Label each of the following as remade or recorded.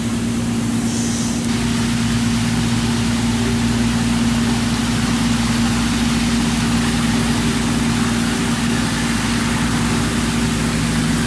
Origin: recorded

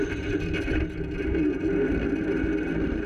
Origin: recorded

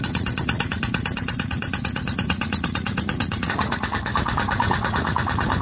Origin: remade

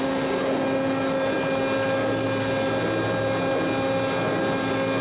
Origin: recorded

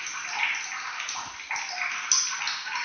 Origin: recorded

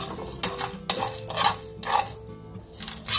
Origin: recorded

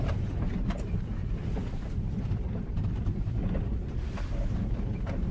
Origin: remade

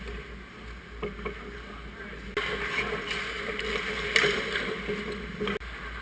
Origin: recorded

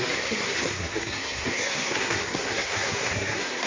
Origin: remade